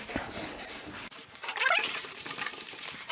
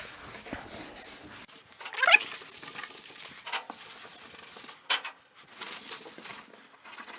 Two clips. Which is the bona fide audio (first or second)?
second